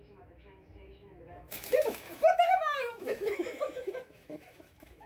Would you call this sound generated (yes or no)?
yes